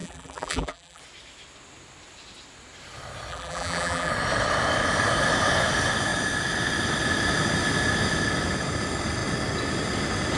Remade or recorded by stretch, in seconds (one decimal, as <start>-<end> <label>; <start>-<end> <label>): 0.0-1.0 remade; 1.0-3.3 recorded; 3.3-4.1 remade; 4.1-10.4 recorded